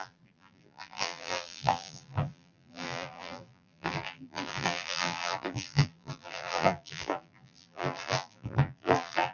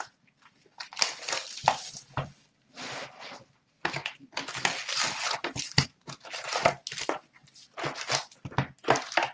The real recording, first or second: second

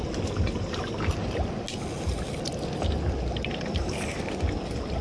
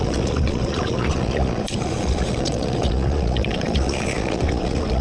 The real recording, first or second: first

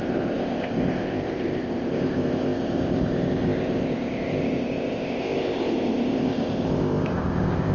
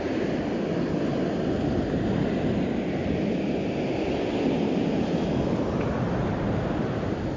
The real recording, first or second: second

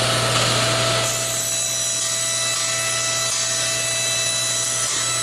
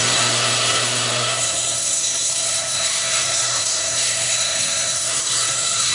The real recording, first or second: first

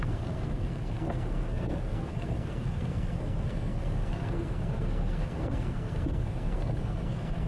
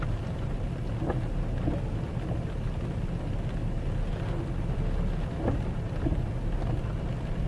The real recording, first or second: second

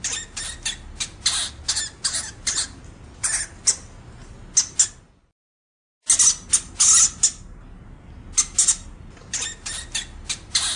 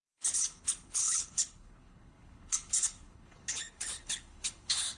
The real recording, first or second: first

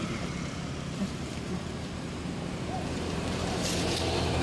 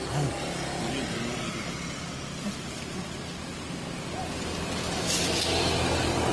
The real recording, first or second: second